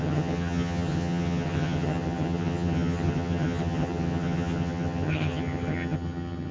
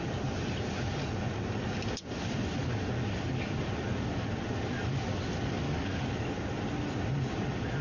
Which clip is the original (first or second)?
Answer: second